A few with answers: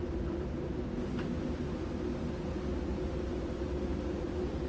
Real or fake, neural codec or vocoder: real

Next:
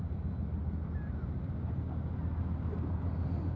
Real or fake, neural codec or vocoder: real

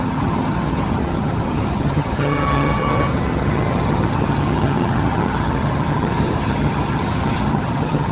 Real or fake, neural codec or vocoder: fake, vocoder, HiFi-GAN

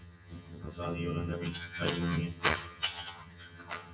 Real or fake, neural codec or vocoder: fake, vocoder, HiFi-GAN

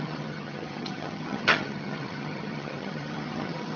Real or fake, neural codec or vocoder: fake, vocoder, HiFi-GAN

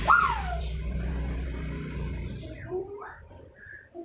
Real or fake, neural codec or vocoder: real